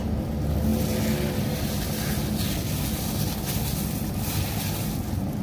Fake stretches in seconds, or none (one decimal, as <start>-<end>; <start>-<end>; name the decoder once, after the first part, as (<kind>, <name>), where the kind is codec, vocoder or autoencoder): none